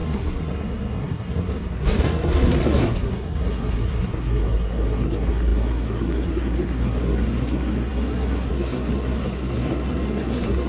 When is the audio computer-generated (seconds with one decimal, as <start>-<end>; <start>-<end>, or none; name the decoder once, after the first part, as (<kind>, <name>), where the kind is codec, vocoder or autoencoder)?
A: 0.0-10.7 (codec, SNAC)